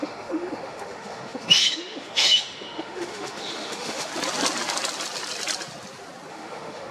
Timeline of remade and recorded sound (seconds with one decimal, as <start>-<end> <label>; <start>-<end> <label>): 0.0-4.1 remade; 4.1-6.3 recorded; 6.3-6.9 remade